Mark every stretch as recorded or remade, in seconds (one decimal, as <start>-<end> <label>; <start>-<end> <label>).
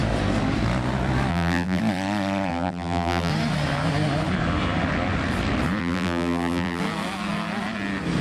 0.0-1.3 recorded; 1.3-1.8 remade; 1.8-2.5 recorded; 2.5-3.3 remade; 3.3-5.8 recorded; 5.8-6.8 remade; 6.8-8.2 recorded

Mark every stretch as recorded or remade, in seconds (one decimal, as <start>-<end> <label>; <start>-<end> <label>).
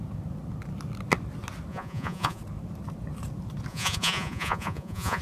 0.0-1.7 recorded; 1.7-2.4 remade; 2.4-3.7 recorded; 3.7-5.2 remade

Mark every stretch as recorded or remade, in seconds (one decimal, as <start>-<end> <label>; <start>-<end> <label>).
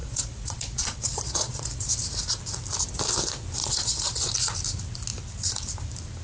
0.0-1.9 remade; 1.9-3.6 recorded; 3.6-4.3 remade; 4.3-6.2 recorded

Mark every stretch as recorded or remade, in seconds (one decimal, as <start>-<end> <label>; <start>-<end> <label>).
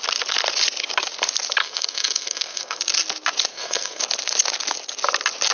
0.0-1.6 recorded; 1.6-2.8 remade; 2.8-3.5 recorded; 3.5-4.0 remade; 4.0-5.5 recorded